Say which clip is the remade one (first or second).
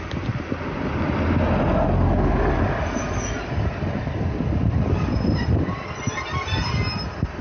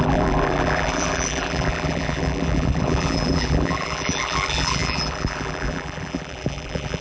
second